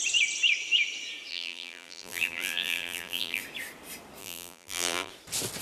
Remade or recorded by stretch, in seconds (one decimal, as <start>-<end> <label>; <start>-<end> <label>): 0.0-1.3 recorded; 1.3-3.4 remade; 3.4-4.2 recorded; 4.2-5.1 remade; 5.1-5.6 recorded